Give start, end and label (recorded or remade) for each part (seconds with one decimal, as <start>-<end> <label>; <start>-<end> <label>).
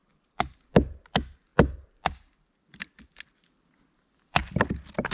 0.0-0.7 remade; 0.7-1.5 recorded; 1.5-3.8 remade; 3.8-4.4 recorded; 4.4-5.1 remade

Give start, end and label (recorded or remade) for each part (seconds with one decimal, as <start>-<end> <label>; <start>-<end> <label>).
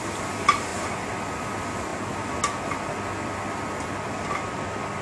0.0-5.0 recorded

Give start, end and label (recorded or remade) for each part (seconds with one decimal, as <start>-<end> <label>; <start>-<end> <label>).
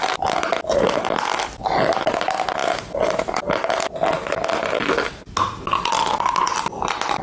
0.0-7.2 recorded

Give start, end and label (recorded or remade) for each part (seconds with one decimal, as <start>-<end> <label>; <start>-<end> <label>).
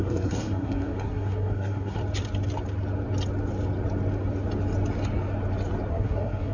0.0-2.0 remade; 2.0-5.9 recorded; 5.9-6.5 remade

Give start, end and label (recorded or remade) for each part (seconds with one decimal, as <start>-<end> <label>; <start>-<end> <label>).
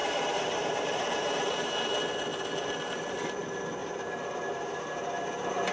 0.0-1.7 remade; 1.7-3.8 recorded; 3.8-5.2 remade; 5.2-5.7 recorded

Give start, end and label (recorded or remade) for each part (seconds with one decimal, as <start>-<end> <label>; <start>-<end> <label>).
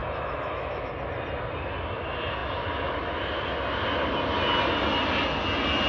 0.0-0.9 remade; 0.9-5.9 recorded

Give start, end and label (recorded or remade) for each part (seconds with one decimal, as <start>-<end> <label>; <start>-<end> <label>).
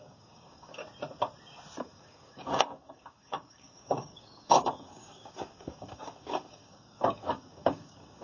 0.0-0.8 remade; 0.8-1.8 recorded; 1.8-8.2 remade